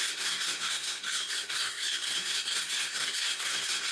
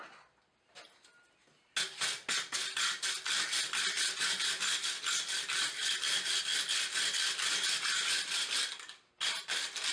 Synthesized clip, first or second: first